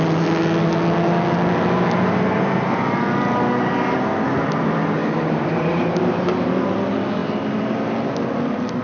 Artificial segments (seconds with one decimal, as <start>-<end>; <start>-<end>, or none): 5.0-6.5